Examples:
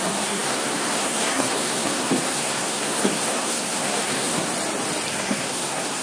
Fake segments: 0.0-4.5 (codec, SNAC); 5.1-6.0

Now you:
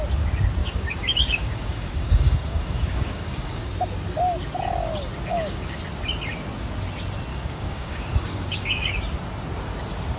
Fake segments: 0.6-3.7 (codec, DAC); 5.3-5.8; 7.3-8.9

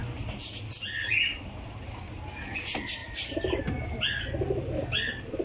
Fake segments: 3.0-3.6 (vocoder, BigVGAN v2)

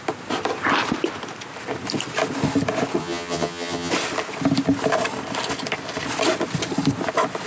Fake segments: 3.0-3.9 (vocoder, HiFi-GAN)

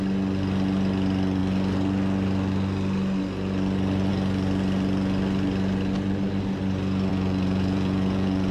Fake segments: 7.1-8.5 (vocoder, Vocos)

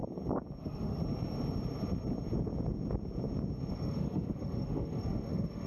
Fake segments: 0.6-1.0 (autoencoder, DAC-VAE); 3.7-5.7